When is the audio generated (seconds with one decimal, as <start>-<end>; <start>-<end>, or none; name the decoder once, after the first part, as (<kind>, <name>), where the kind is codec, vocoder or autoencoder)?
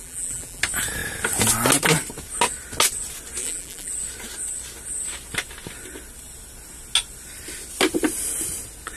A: 0.0-0.6 (vocoder, BigVGAN v2); 3.4-3.9